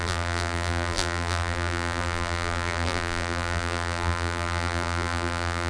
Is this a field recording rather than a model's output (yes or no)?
no